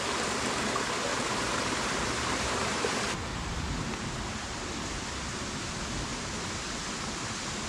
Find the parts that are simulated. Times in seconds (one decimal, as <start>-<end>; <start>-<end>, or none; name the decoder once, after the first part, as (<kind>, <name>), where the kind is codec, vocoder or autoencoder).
1.1-3.0 (vocoder, BigVGAN v2)